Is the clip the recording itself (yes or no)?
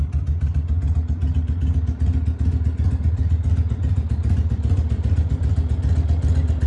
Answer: yes